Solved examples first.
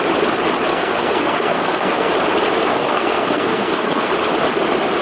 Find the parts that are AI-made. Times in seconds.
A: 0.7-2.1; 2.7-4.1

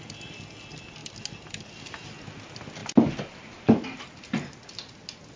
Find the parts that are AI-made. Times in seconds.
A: none

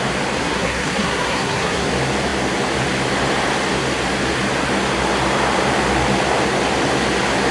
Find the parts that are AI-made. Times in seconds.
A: 0.4-1.9

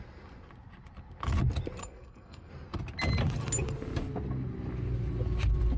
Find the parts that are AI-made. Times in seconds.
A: 1.8-2.5